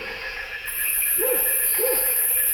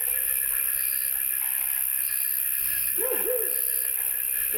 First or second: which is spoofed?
first